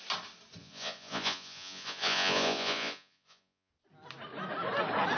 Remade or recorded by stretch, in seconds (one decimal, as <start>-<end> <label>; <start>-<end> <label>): 0.0-0.6 recorded; 0.6-3.7 remade; 3.7-5.2 recorded